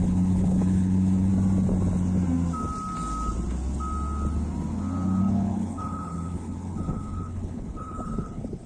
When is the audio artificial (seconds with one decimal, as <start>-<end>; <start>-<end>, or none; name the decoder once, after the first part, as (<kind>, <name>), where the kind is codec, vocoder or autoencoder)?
0.0-1.3 (codec, HILCodec); 5.2-8.7